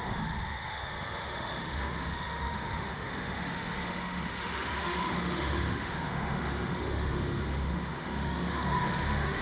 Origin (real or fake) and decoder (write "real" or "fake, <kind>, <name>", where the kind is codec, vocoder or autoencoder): fake, autoencoder, DAC-VAE